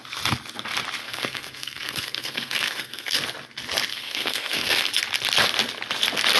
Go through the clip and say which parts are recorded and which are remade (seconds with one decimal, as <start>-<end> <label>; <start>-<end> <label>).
0.0-1.0 recorded; 1.0-3.2 remade; 3.2-3.9 recorded; 3.9-4.9 remade; 4.9-6.4 recorded